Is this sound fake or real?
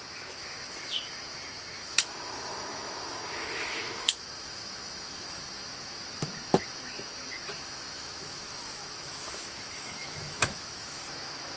fake